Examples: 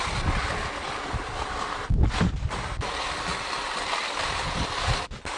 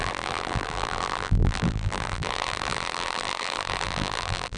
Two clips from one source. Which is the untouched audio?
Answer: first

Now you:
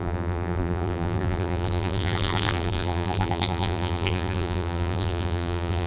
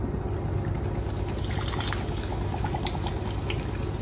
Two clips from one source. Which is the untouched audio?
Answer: second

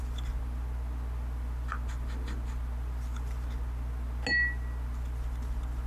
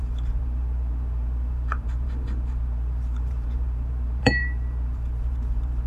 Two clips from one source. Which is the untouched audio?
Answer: first